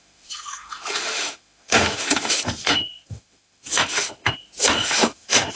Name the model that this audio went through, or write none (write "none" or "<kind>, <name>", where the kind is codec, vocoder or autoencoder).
autoencoder, DAC-VAE